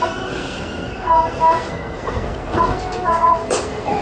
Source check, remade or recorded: remade